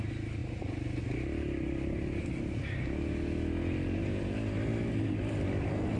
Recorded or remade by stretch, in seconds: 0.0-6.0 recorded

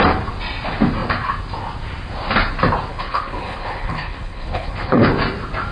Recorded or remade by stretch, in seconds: 0.0-2.9 recorded; 2.9-5.1 remade; 5.1-5.7 recorded

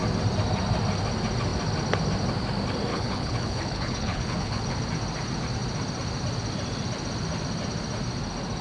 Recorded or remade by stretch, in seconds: 0.0-2.9 recorded; 2.9-4.7 remade; 4.7-8.6 recorded